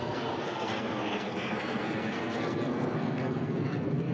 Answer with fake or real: fake